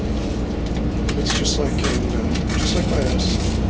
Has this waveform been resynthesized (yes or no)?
yes